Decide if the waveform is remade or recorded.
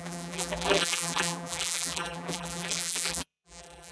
remade